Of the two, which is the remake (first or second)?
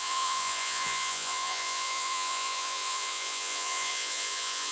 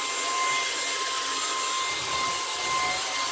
first